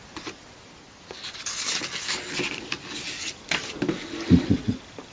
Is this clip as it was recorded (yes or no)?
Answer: yes